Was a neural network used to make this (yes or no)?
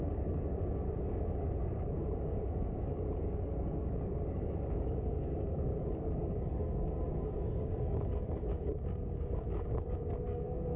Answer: yes